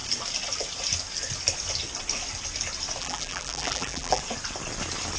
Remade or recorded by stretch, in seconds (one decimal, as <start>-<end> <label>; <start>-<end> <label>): 0.0-3.0 recorded; 3.0-4.2 remade; 4.2-5.2 recorded